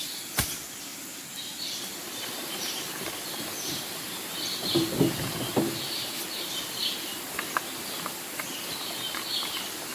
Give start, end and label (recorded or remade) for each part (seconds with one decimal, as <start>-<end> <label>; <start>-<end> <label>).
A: 0.0-0.9 recorded; 0.9-6.2 remade; 6.2-9.9 recorded